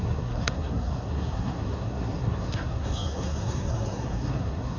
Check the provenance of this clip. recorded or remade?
remade